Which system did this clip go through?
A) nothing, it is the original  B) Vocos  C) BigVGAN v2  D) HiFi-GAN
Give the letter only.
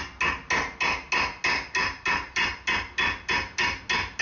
A